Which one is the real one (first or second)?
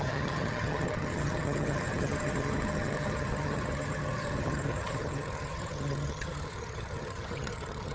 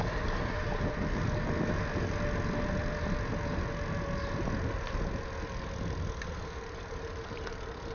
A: second